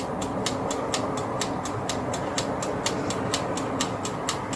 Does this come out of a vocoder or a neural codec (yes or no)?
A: no